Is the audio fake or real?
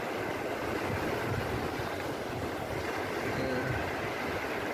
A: real